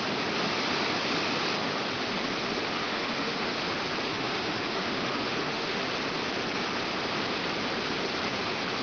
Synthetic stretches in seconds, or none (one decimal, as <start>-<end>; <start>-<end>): 2.8-3.5; 4.1-5.8